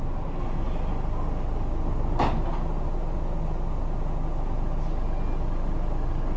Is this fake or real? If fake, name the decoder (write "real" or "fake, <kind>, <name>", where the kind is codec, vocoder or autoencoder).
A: real